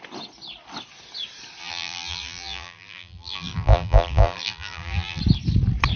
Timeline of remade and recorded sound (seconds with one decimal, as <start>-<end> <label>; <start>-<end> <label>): 0.0-1.6 recorded; 1.6-5.2 remade; 5.2-6.0 recorded